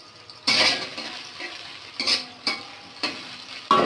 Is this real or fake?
real